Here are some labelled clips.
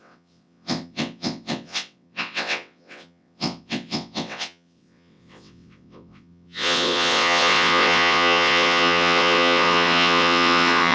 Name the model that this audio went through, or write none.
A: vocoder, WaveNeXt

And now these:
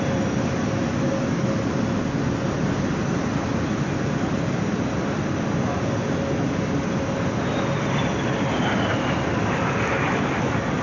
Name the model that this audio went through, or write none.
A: none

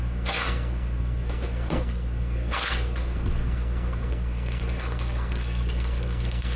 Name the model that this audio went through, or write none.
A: codec, SNAC